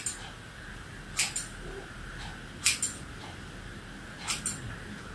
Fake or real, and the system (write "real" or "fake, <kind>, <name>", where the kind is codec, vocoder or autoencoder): real